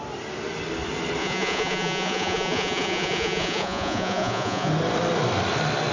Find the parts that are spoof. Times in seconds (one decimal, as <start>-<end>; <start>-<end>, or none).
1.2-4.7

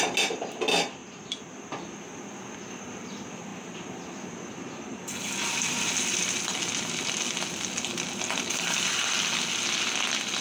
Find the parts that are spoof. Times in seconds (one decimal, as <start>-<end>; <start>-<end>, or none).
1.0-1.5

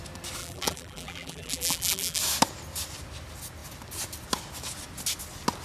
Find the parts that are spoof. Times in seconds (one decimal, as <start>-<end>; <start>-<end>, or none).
0.4-2.2

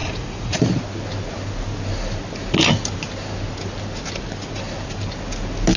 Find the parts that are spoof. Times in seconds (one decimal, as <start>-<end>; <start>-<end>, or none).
0.0-0.6

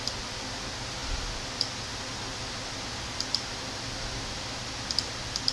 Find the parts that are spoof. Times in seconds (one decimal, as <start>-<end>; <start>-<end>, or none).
none

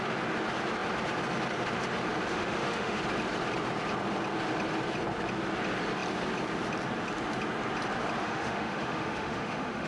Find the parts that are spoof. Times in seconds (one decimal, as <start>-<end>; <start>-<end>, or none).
2.3-3.0; 8.2-9.9

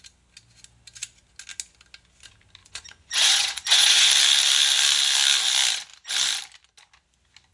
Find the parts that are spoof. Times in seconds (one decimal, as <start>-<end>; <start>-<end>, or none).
2.6-4.1

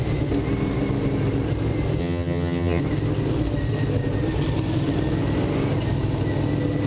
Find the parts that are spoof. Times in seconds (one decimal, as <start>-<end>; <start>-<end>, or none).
2.0-2.8